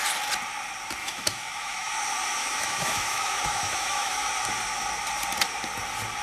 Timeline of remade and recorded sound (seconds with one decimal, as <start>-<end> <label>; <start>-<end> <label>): 0.0-1.0 recorded; 1.0-1.9 remade; 1.9-2.4 recorded; 2.4-4.3 remade; 4.3-6.2 recorded